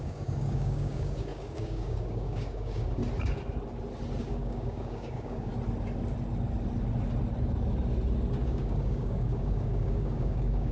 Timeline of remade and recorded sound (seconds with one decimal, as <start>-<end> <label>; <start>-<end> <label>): 0.0-3.0 remade; 3.0-4.2 recorded; 4.2-5.5 remade; 5.5-8.4 recorded; 8.4-10.7 remade